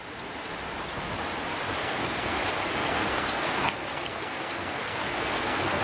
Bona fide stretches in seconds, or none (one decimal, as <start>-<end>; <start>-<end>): 0.0-1.8; 2.4-2.8